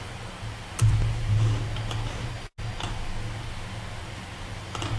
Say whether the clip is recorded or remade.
recorded